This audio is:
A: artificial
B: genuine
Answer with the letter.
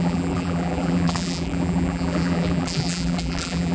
A